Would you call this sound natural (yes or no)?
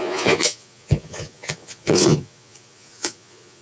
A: no